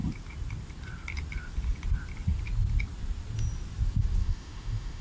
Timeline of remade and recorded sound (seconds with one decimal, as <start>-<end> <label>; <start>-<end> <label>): 0.0-4.2 recorded; 4.2-5.0 remade